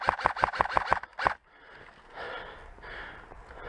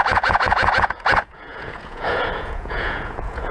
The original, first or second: first